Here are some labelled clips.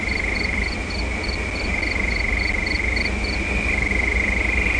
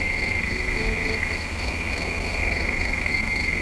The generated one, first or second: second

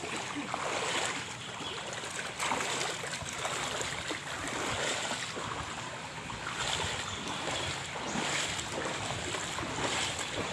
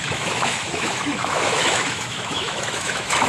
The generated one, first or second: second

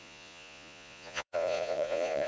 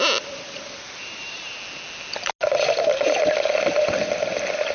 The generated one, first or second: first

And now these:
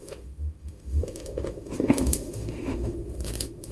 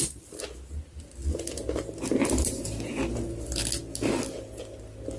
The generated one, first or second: first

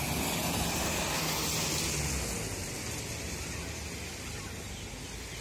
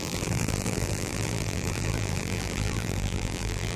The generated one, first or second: second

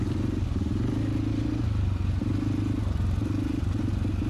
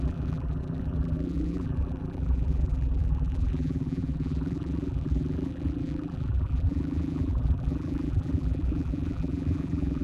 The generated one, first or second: second